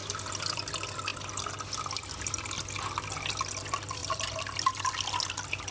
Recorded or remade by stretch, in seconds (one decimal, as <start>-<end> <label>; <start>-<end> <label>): 0.0-5.7 recorded